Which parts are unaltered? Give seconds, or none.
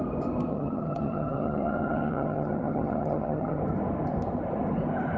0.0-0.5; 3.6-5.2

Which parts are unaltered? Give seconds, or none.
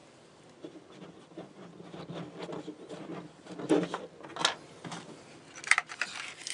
0.0-6.5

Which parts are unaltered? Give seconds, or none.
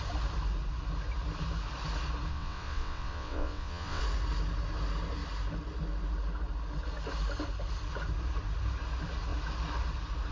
0.0-2.3; 4.0-10.3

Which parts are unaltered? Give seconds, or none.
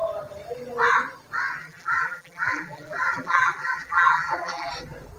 0.0-1.6; 4.7-5.2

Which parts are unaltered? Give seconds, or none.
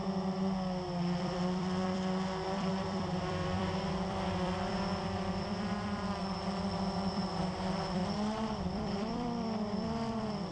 0.0-1.2; 6.2-7.1; 8.0-8.6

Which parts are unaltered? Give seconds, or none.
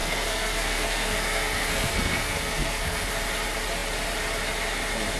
3.1-5.2